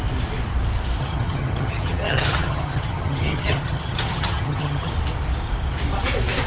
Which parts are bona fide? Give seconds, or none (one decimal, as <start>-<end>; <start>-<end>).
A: 0.0-1.0; 4.9-6.5